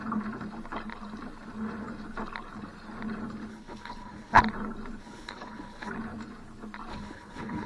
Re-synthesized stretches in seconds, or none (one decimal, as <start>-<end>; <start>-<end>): 3.5-4.4; 5.0-5.9; 6.9-7.7